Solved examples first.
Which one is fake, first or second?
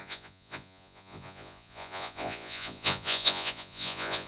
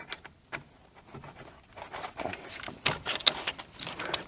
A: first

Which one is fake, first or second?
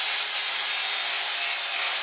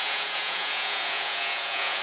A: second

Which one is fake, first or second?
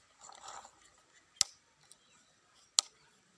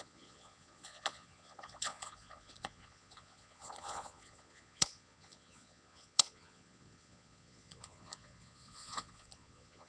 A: second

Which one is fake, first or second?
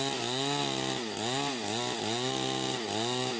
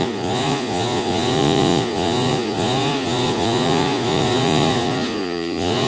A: second